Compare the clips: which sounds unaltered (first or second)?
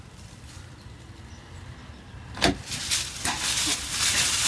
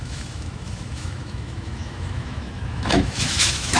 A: first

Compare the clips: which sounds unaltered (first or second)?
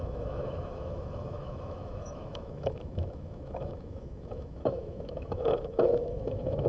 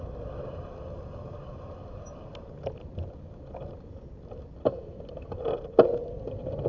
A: second